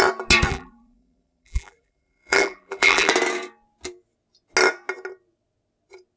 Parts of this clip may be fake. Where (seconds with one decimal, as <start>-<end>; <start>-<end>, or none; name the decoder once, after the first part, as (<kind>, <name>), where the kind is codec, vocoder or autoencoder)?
0.5-3.1 (vocoder, BigVGAN v2)